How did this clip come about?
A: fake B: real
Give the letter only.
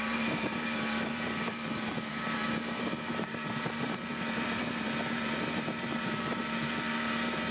A